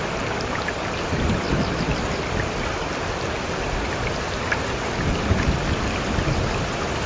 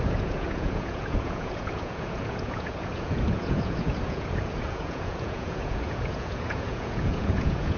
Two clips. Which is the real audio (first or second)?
first